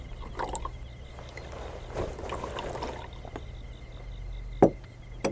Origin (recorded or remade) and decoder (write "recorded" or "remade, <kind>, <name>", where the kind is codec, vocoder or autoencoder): recorded